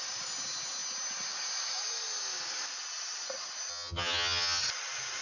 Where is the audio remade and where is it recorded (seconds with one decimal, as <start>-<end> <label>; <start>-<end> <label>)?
0.0-3.7 recorded; 3.7-4.6 remade; 4.6-5.2 recorded